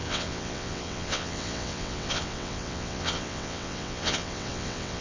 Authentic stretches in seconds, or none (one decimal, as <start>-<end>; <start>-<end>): none